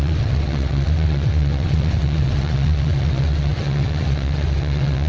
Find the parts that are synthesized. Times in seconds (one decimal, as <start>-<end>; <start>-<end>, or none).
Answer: 0.0-5.1